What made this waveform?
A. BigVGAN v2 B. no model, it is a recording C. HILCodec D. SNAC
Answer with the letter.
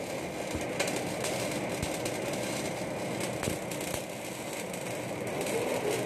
B